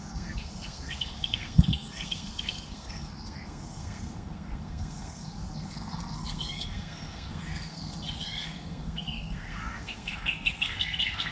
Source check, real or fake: fake